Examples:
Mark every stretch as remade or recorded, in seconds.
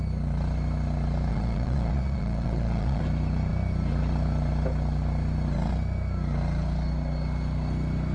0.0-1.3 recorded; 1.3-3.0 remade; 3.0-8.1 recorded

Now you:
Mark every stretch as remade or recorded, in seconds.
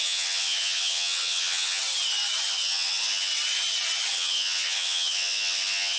0.0-1.8 remade; 1.8-2.5 recorded; 2.5-3.3 remade; 3.3-4.1 recorded; 4.1-6.0 remade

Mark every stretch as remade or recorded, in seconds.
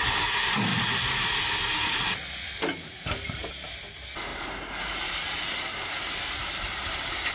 0.0-0.7 recorded; 0.7-2.0 remade; 2.0-2.7 recorded; 2.7-3.7 remade; 3.7-4.3 recorded; 4.3-7.3 remade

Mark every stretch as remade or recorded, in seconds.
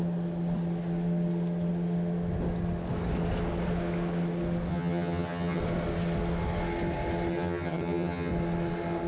0.0-4.7 recorded; 4.7-5.6 remade; 5.6-7.3 recorded; 7.3-8.3 remade; 8.3-9.1 recorded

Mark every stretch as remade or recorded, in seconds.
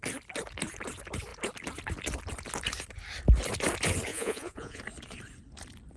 0.0-4.1 recorded; 4.1-4.8 remade; 4.8-6.0 recorded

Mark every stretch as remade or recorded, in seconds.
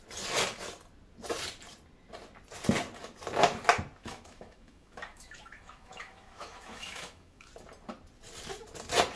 0.0-4.0 recorded; 4.0-7.5 remade; 7.5-9.2 recorded